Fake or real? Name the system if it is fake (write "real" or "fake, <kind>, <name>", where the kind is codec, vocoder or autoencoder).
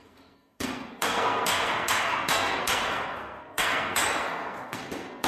fake, codec, SNAC